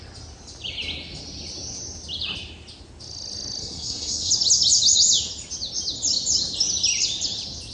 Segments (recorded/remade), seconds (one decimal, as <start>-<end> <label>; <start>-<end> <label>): 0.0-3.6 recorded; 3.6-4.3 remade; 4.3-7.7 recorded